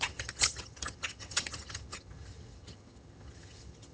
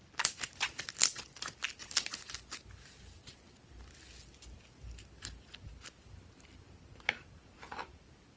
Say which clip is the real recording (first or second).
second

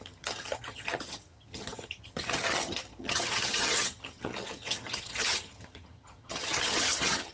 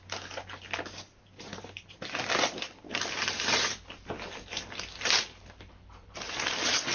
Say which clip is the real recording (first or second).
second